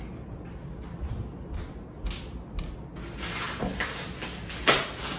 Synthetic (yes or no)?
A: no